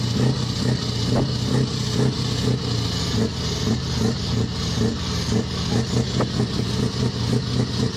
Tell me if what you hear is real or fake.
real